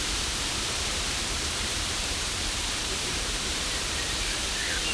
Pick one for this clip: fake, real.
fake